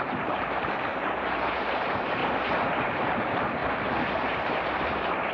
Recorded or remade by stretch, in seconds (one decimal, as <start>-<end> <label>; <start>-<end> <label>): 0.0-2.2 remade; 2.2-2.8 recorded; 2.8-3.6 remade; 3.6-4.2 recorded; 4.2-5.3 remade